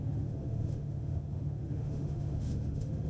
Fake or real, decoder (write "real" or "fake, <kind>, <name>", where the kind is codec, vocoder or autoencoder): fake, autoencoder, DAC-VAE